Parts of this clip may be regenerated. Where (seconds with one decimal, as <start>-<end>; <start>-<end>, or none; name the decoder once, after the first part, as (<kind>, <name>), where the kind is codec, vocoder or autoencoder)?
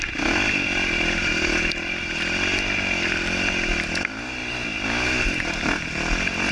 none